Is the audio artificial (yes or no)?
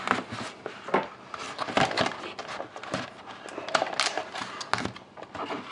no